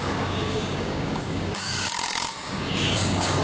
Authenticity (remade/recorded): remade